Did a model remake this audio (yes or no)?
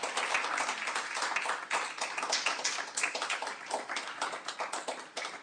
no